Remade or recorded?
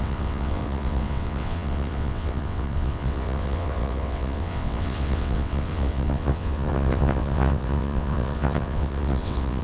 remade